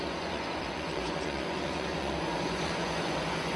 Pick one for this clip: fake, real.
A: fake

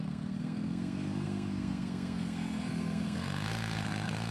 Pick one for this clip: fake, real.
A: fake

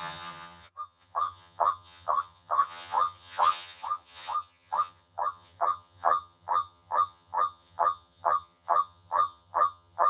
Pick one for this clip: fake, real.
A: fake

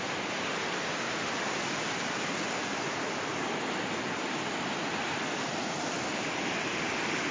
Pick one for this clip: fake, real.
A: fake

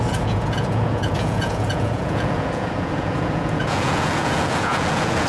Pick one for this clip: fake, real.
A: fake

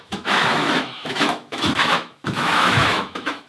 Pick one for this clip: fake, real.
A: fake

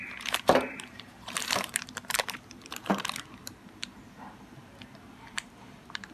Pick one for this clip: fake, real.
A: fake